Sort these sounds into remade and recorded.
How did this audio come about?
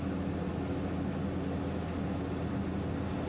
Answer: recorded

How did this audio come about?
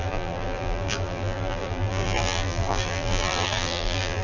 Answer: remade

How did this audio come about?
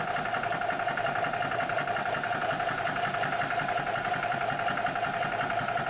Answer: remade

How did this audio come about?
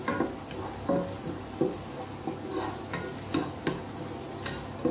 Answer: recorded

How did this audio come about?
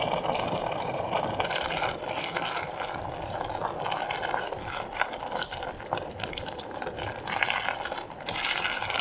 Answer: remade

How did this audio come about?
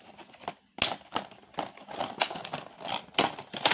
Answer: recorded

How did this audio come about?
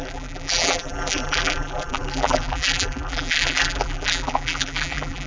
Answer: remade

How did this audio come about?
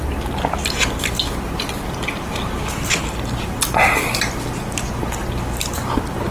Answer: recorded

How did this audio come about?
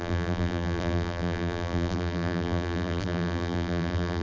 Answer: remade